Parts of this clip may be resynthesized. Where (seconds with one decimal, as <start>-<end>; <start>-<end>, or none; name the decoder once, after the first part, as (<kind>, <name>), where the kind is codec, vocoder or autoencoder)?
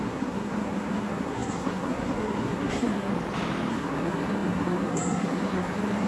0.0-3.1 (codec, SNAC); 3.7-6.1